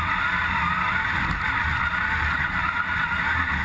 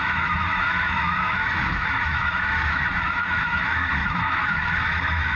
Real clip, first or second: first